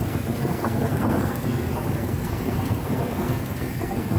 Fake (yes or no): yes